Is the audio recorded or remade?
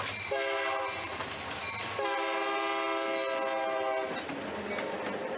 recorded